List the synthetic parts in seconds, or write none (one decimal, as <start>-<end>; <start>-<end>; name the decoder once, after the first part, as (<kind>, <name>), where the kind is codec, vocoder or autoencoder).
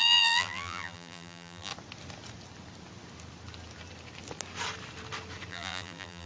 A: 0.0-1.7 (vocoder, BigVGAN v2); 5.5-6.3